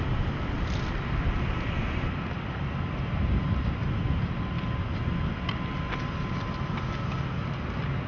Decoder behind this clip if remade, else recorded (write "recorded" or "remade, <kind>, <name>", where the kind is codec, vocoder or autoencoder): recorded